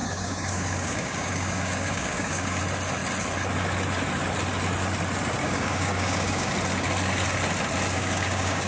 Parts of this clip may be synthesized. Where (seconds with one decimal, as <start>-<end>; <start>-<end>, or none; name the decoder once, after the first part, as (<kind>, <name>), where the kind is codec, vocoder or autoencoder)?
0.0-2.6 (codec, DAC); 5.4-6.5; 7.9-8.7